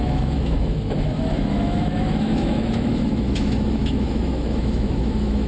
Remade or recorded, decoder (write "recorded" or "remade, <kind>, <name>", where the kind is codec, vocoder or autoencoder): remade, autoencoder, DAC-VAE